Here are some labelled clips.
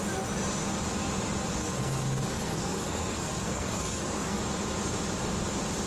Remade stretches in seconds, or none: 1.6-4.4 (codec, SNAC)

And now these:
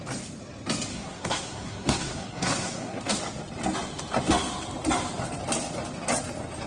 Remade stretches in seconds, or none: 0.9-3.2 (codec, SNAC)

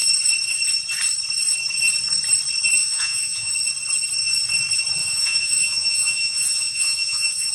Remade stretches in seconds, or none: 2.8-3.5 (vocoder, Vocos); 5.0-7.5

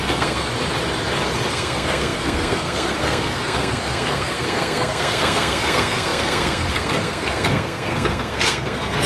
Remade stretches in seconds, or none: 0.0-0.5 (codec, SNAC); 1.5-9.1

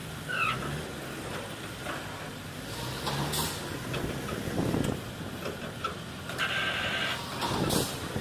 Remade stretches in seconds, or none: none